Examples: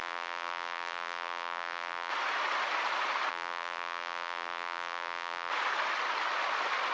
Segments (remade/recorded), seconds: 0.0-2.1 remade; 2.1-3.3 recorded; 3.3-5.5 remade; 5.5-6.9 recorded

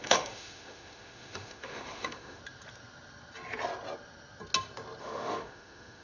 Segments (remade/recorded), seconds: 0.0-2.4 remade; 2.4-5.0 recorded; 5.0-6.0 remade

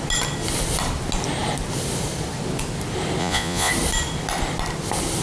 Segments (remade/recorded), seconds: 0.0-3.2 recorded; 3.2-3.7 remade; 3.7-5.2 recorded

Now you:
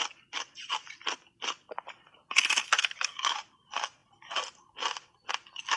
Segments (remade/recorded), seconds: 0.0-5.8 recorded

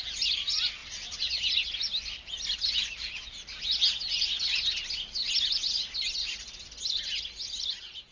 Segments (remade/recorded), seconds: 0.0-0.8 recorded; 0.8-1.3 remade; 1.3-8.1 recorded

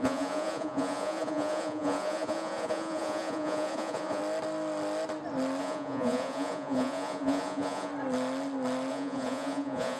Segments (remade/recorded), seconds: 0.0-4.2 remade; 4.2-5.6 recorded; 5.6-7.9 remade; 7.9-8.9 recorded; 8.9-10.0 remade

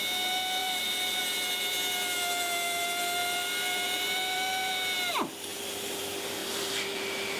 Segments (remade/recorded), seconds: 0.0-0.6 recorded; 0.6-1.2 remade; 1.2-3.2 recorded; 3.2-4.7 remade; 4.7-6.4 recorded; 6.4-7.4 remade